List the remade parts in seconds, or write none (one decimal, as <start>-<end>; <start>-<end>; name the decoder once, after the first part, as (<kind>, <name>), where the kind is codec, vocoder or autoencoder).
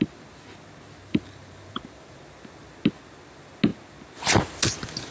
1.0-2.2 (vocoder, BigVGAN v2)